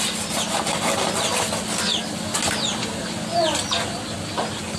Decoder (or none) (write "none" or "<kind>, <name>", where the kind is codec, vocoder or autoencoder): none